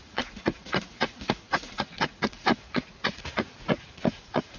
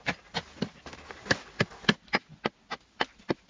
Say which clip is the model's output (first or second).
first